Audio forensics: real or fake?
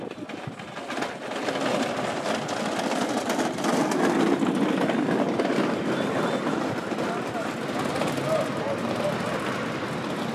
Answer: real